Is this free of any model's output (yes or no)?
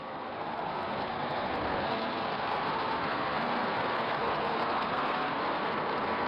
no